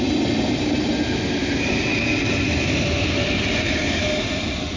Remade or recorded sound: recorded